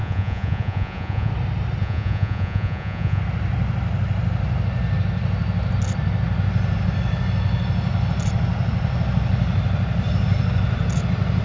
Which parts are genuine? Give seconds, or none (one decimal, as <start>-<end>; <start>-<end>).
1.3-1.8; 3.2-11.4